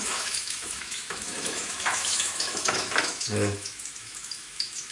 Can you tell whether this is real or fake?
fake